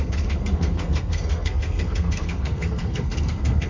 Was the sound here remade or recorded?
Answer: remade